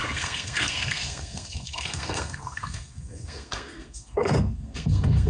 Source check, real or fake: fake